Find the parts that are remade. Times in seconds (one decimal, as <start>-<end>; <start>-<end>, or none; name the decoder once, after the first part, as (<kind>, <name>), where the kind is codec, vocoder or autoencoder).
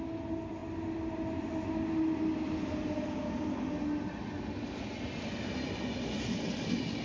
none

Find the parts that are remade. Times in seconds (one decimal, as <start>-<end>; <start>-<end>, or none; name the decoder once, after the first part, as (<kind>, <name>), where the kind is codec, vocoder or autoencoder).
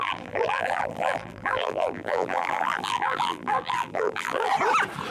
0.0-4.5 (vocoder, BigVGAN v2)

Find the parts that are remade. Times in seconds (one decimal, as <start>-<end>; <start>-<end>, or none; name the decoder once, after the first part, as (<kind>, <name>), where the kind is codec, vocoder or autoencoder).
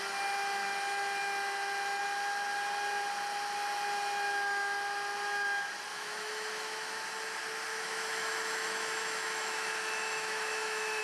5.9-7.0 (autoencoder, DAC-VAE); 7.7-11.0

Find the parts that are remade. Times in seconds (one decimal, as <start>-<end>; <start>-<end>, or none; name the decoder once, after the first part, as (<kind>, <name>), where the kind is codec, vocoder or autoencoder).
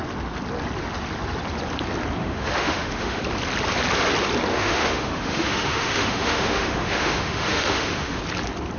2.2-3.2 (autoencoder, DAC-VAE); 4.5-8.2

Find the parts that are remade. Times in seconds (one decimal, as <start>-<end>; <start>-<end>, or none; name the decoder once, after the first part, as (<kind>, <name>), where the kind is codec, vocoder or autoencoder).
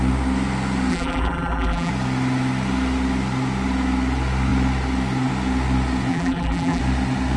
0.9-1.9 (vocoder, BigVGAN v2); 6.1-6.8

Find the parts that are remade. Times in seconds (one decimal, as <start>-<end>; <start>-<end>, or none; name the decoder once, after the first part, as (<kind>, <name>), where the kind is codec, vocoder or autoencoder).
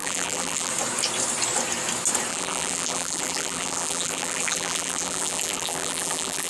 0.0-0.7 (vocoder, BigVGAN v2); 2.3-6.5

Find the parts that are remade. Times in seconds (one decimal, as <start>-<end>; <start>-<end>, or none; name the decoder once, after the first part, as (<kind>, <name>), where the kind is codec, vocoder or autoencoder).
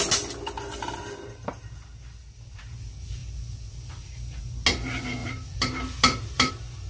5.2-6.5 (vocoder, BigVGAN v2)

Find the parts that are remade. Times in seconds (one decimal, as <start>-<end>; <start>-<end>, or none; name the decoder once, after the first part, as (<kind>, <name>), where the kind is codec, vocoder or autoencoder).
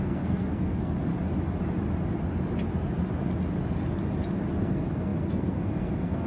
0.0-1.1 (codec, SNAC); 4.5-6.3